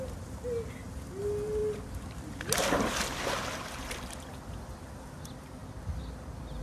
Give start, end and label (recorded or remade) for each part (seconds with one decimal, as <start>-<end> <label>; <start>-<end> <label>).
0.0-6.6 recorded